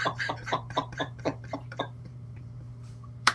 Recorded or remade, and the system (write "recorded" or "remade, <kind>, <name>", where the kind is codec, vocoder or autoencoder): remade, vocoder, BigVGAN v2